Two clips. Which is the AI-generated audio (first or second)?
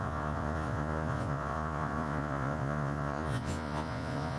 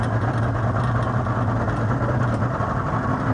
first